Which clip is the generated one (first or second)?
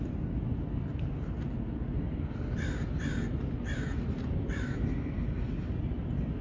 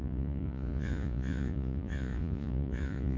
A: second